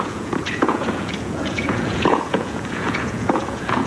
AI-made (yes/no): yes